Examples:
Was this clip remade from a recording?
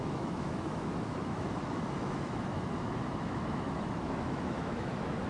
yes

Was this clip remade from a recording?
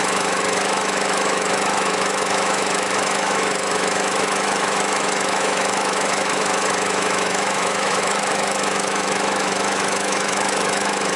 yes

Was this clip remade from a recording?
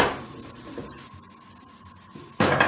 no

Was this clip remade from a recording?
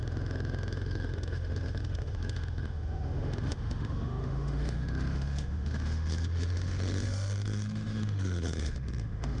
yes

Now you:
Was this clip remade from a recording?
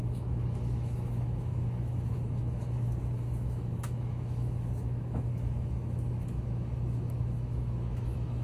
yes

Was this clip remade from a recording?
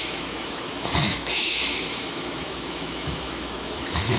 yes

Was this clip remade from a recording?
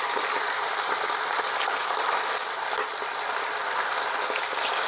no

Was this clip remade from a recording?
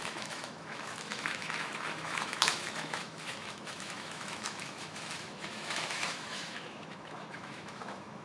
yes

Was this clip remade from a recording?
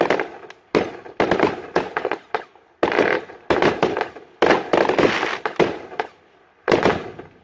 no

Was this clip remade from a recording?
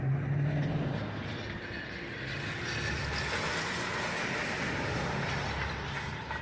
no